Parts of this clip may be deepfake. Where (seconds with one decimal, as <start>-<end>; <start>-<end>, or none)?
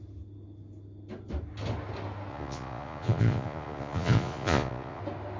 2.3-5.0